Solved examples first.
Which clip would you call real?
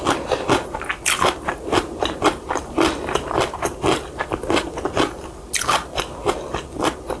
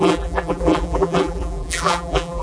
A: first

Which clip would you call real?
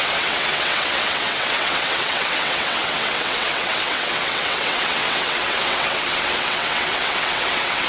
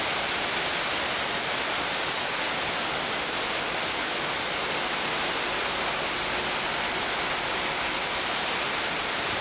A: second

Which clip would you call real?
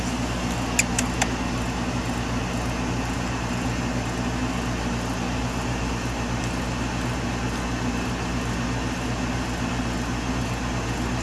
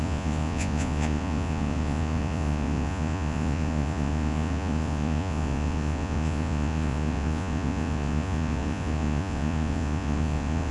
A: first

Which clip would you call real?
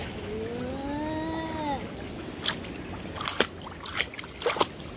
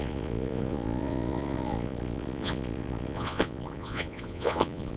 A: first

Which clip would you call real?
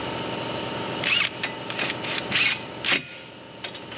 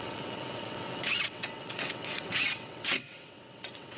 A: first